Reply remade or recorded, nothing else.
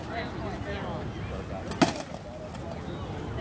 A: recorded